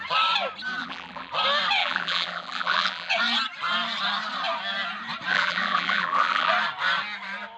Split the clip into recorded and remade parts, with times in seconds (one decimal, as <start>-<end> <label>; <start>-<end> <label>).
0.0-0.8 recorded; 0.8-1.3 remade; 1.3-1.8 recorded; 1.8-3.1 remade; 3.1-5.3 recorded; 5.3-6.5 remade; 6.5-7.6 recorded